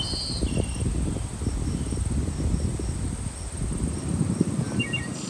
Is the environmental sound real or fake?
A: real